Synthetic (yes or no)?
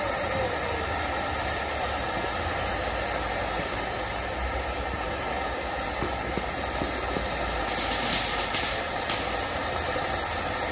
no